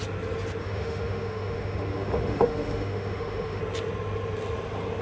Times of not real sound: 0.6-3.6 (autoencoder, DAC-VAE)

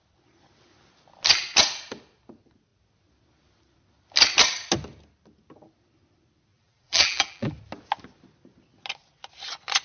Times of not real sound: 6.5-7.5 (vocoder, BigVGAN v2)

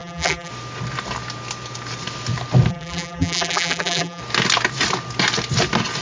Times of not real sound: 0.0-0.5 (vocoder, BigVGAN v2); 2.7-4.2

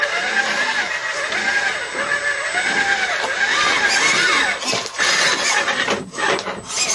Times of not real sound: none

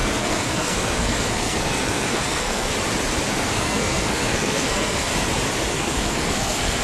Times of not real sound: 0.0-2.7 (codec, SNAC); 3.3-5.1; 5.7-6.8

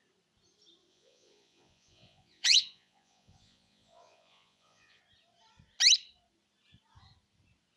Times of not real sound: 0.9-5.0 (vocoder, Vocos)